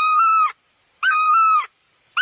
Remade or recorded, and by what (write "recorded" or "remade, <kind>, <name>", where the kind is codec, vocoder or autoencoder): recorded